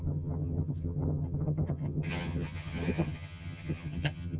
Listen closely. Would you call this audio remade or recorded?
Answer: remade